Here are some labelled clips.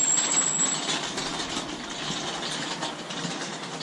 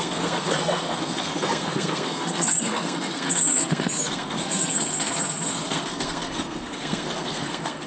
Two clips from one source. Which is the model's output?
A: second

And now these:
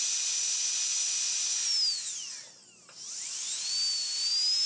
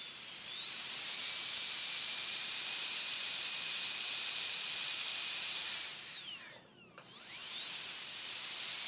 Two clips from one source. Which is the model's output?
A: second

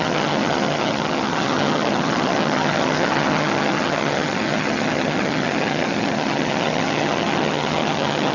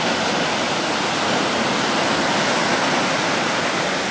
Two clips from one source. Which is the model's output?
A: first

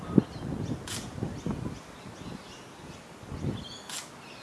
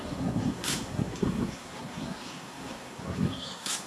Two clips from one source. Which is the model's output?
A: second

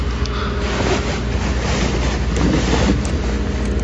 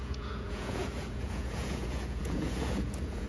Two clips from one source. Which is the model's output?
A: second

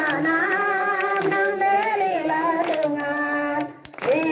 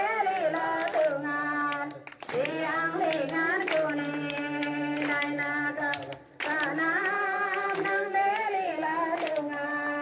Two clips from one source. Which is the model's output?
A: first